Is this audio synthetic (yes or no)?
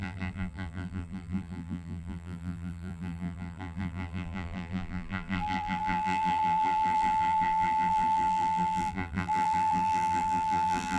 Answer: yes